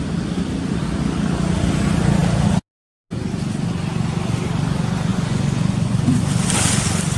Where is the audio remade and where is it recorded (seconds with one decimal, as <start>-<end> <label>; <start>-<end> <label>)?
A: 0.0-5.1 recorded; 5.1-6.2 remade; 6.2-7.2 recorded